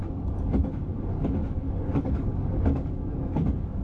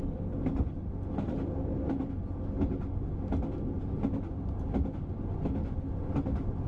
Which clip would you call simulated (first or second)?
first